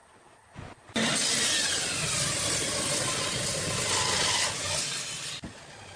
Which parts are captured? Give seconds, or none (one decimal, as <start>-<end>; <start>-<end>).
0.0-6.0